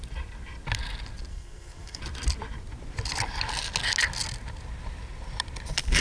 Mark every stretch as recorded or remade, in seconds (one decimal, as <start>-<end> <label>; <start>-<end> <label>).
0.0-1.3 recorded; 1.3-2.0 remade; 2.0-6.0 recorded